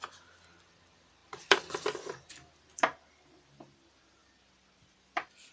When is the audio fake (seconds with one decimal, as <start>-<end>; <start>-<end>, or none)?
1.2-2.3